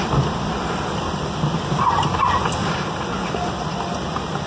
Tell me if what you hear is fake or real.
real